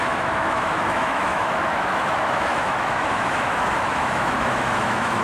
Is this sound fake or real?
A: fake